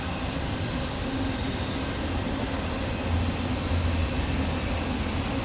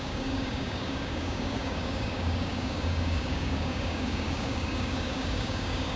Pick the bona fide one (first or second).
first